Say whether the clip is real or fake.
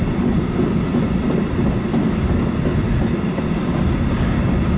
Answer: real